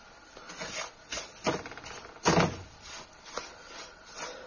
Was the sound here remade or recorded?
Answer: recorded